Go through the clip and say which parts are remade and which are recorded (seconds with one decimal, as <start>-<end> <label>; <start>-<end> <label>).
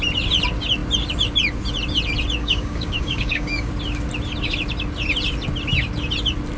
0.0-2.4 recorded; 2.4-3.7 remade; 3.7-6.6 recorded